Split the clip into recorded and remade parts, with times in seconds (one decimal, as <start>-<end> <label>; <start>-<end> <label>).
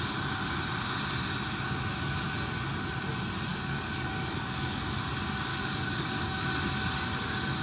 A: 0.0-3.5 recorded; 3.5-4.8 remade; 4.8-5.5 recorded; 5.5-6.5 remade; 6.5-7.6 recorded